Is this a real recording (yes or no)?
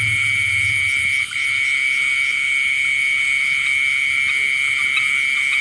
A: yes